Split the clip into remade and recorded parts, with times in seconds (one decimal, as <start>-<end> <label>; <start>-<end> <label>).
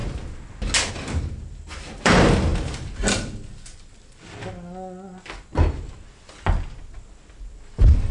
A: 0.0-8.1 recorded